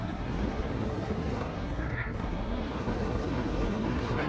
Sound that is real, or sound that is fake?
fake